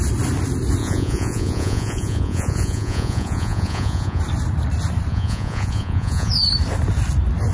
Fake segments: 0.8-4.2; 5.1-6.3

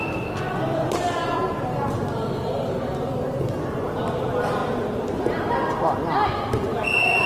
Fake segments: none

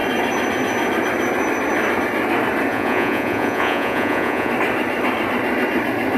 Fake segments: 2.7-4.5

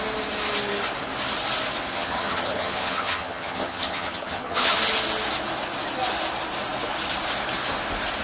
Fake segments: 1.9-4.8